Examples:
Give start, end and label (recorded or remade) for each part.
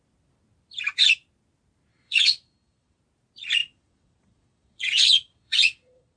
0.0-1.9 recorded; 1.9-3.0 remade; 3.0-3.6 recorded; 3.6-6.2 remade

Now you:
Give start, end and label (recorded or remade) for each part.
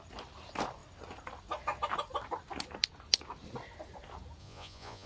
0.0-4.4 recorded; 4.4-5.1 remade